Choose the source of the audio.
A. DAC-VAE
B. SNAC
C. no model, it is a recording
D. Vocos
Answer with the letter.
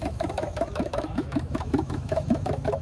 A